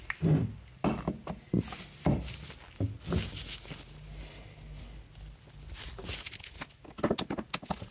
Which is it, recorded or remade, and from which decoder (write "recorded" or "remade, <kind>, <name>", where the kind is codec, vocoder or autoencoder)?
recorded